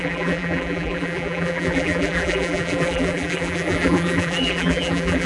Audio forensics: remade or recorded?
remade